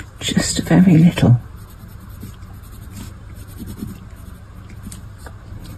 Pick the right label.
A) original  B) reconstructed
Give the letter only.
A